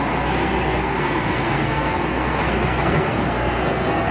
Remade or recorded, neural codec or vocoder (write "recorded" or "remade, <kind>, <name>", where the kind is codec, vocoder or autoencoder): remade, codec, SNAC